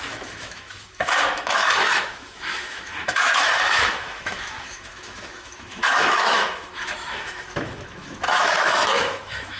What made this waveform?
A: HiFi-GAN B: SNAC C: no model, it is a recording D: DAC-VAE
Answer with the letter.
D